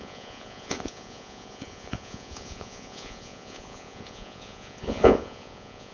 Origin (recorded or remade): remade